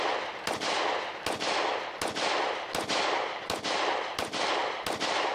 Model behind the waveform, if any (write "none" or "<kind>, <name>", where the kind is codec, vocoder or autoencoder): none